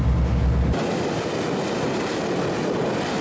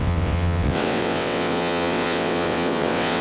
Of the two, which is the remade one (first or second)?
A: second